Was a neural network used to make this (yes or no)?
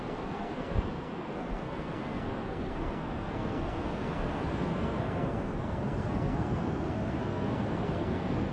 yes